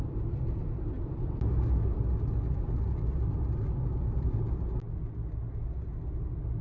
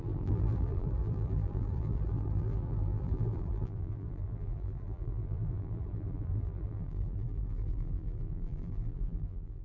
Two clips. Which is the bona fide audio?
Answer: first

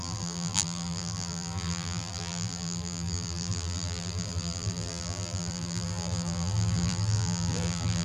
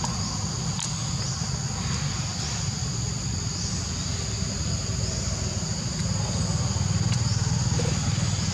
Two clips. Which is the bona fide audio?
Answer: second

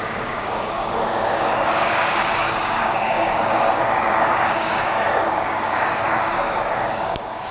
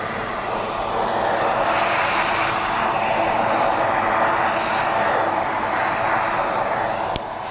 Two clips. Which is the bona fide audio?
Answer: second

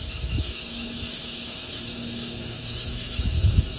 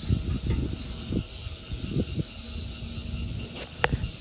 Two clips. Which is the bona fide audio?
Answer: second